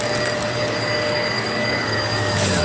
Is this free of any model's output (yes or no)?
no